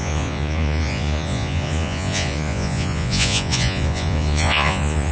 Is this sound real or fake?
fake